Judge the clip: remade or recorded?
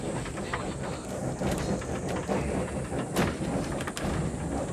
recorded